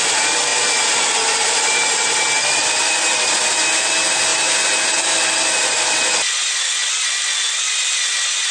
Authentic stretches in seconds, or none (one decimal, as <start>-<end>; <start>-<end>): 0.0-8.5